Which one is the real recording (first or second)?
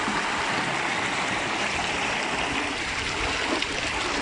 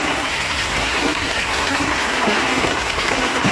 first